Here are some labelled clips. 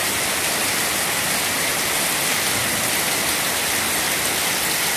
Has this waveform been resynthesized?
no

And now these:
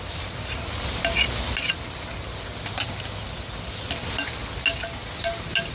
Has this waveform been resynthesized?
no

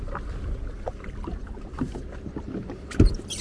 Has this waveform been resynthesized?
no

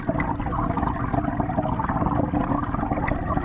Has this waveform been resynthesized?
no